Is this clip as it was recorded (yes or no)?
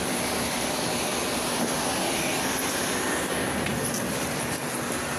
yes